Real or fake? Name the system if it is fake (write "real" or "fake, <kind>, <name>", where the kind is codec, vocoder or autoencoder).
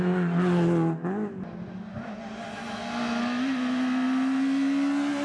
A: real